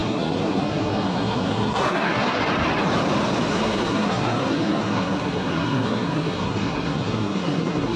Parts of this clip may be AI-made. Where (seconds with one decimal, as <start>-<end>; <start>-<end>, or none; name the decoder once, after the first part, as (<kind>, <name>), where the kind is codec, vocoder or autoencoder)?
0.0-2.4 (codec, SNAC); 3.5-8.0